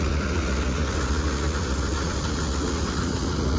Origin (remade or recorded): remade